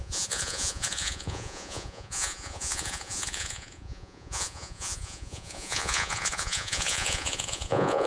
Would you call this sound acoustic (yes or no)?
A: no